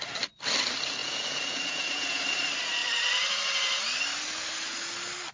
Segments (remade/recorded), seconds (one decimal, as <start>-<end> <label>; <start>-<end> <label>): 0.0-1.0 recorded; 1.0-2.2 remade; 2.2-5.3 recorded